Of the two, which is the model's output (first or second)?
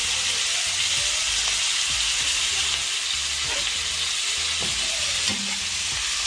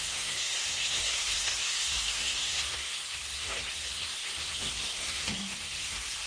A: second